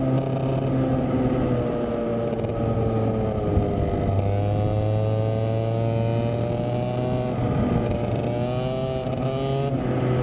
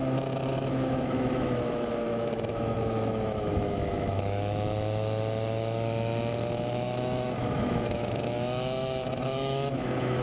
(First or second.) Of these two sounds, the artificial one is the second